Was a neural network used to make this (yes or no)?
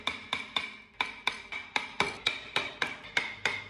no